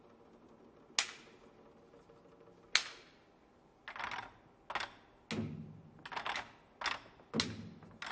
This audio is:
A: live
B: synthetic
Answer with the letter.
A